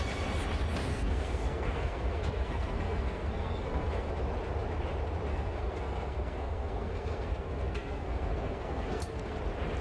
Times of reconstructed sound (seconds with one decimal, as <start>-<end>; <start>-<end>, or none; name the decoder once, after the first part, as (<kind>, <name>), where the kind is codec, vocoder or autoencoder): 0.9-4.1 (codec, SNAC); 5.3-9.4